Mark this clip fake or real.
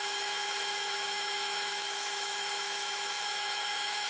fake